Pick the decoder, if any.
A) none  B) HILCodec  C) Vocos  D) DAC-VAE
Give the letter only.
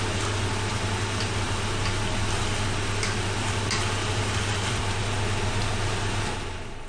A